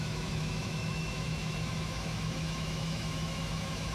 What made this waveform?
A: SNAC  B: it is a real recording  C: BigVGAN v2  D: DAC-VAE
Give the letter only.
D